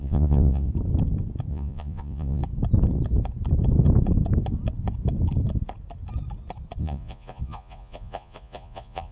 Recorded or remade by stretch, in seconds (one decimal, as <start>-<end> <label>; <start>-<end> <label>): 0.0-0.7 remade; 0.7-1.5 recorded; 1.5-2.4 remade; 2.4-6.8 recorded; 6.8-9.1 remade